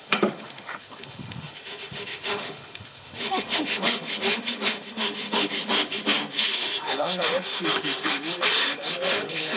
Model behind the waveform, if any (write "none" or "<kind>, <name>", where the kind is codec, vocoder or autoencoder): autoencoder, DAC-VAE